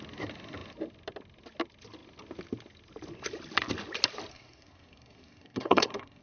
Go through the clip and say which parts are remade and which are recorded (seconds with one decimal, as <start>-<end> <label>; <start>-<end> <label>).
0.0-4.3 recorded; 4.3-6.2 remade